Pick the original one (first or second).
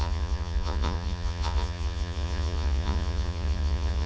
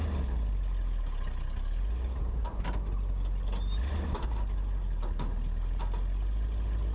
second